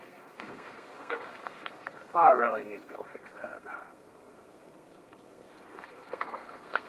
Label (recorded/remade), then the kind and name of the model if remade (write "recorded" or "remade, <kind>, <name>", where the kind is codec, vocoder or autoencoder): remade, codec, SNAC